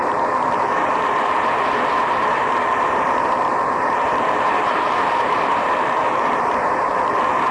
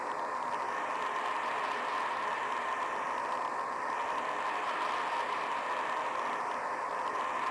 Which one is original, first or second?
second